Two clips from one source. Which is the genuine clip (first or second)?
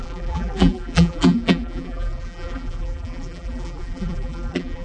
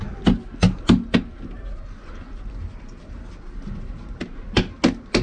second